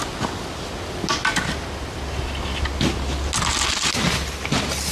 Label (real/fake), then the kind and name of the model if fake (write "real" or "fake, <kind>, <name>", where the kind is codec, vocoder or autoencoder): real